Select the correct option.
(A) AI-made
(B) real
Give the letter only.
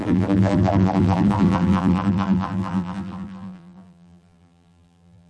A